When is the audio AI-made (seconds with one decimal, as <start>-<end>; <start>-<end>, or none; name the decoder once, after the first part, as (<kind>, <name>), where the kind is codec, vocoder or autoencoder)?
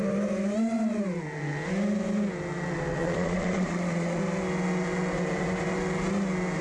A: 3.0-4.2 (vocoder, Vocos)